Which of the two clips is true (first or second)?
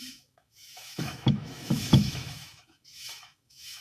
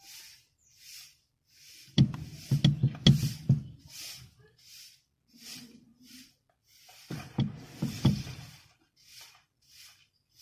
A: second